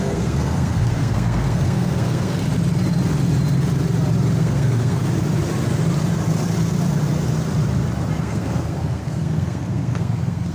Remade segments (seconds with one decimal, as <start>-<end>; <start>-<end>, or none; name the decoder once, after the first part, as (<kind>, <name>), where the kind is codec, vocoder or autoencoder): 0.0-2.4 (codec, SNAC); 4.4-5.0; 8.2-10.5